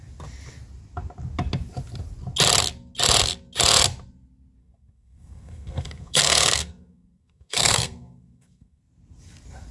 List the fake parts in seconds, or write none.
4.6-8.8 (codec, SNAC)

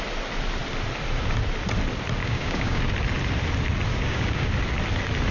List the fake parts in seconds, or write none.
2.2-2.8 (codec, DAC); 3.9-4.5

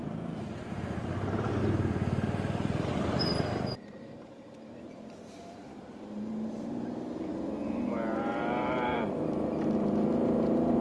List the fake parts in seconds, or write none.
0.0-1.6 (vocoder, BigVGAN v2); 2.9-7.3; 7.9-10.8